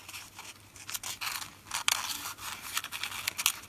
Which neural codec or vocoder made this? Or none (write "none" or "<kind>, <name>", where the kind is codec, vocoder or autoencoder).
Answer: none